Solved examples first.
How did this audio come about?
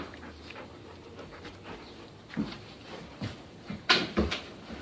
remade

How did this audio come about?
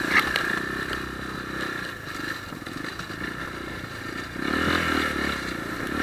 recorded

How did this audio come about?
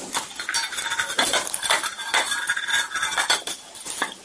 recorded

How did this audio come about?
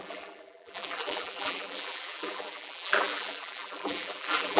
remade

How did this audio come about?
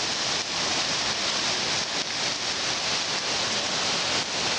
recorded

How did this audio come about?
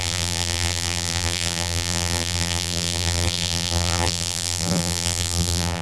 remade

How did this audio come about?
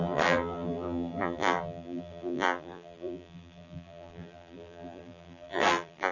remade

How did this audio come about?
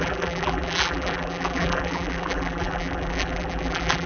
remade